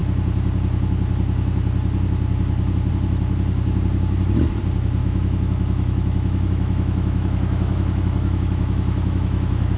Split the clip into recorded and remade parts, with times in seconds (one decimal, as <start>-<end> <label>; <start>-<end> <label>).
0.0-5.0 recorded; 5.0-9.8 remade